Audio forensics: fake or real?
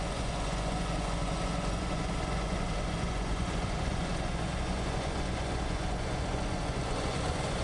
fake